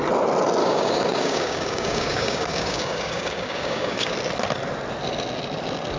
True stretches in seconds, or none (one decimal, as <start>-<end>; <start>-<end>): 0.0-0.6; 4.1-6.0